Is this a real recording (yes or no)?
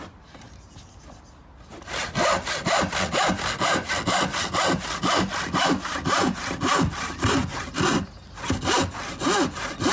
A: yes